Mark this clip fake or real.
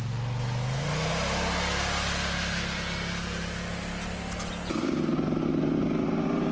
real